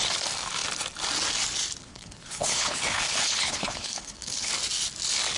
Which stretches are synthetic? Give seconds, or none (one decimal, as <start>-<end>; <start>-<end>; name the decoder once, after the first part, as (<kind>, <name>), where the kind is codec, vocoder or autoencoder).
1.8-4.5 (codec, HILCodec)